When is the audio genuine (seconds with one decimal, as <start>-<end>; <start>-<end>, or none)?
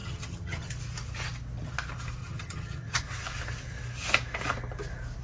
0.7-2.2; 3.0-5.2